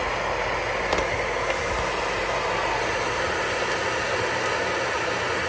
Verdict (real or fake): real